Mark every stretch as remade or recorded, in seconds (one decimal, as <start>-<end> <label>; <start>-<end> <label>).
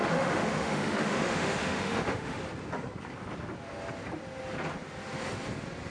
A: 0.0-2.4 remade; 2.4-5.9 recorded